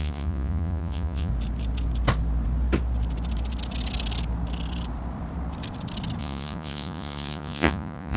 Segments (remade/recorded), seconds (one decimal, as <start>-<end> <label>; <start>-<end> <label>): 0.0-1.3 remade; 1.3-6.2 recorded; 6.2-8.2 remade